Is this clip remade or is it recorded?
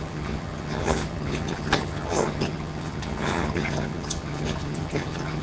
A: remade